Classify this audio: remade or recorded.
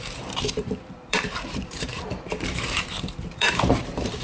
remade